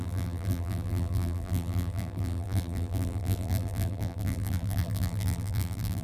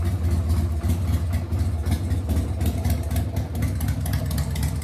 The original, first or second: second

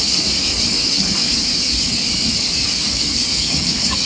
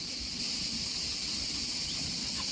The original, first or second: second